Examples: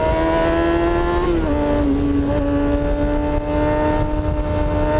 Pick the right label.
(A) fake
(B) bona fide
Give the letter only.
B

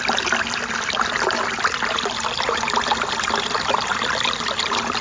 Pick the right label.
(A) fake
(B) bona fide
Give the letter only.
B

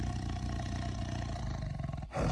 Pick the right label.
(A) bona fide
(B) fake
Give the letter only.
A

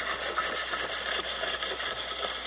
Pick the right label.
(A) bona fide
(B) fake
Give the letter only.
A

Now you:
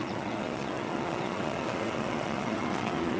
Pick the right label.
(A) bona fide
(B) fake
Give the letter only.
B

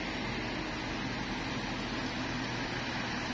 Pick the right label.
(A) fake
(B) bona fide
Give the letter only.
B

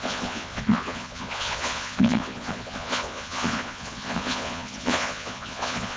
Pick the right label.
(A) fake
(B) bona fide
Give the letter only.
A